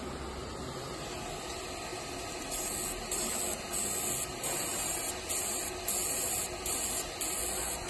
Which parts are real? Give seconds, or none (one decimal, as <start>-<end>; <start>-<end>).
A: 0.0-7.9